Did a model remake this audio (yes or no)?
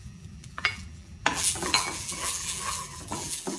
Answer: yes